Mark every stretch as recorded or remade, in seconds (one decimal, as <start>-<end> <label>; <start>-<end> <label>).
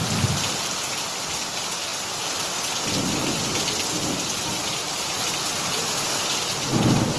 0.0-7.2 recorded